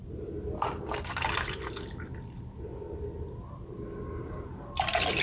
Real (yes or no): yes